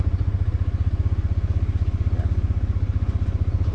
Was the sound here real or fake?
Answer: real